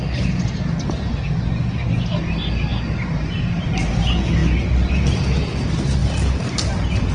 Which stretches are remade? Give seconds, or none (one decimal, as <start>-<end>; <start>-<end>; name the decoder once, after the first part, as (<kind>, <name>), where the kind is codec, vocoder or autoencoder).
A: none